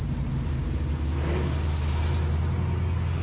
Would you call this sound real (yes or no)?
yes